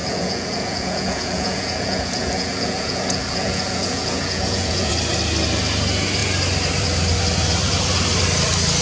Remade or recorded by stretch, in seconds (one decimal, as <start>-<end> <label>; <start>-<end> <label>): 0.0-4.9 remade; 4.9-8.8 recorded